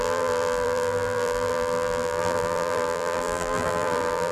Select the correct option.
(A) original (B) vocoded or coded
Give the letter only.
B